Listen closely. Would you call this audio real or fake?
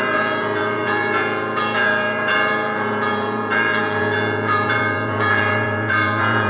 fake